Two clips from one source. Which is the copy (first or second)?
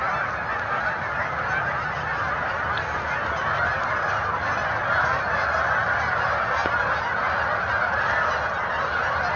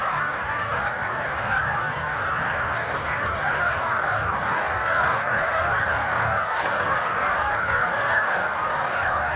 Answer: second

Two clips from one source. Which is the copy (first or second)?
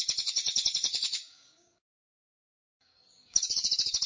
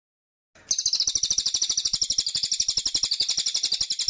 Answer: first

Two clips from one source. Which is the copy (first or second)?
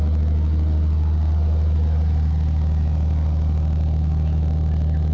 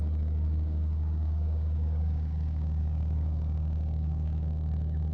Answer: second